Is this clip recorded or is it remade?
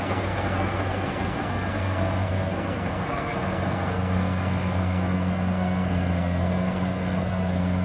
remade